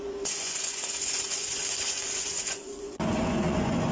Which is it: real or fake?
fake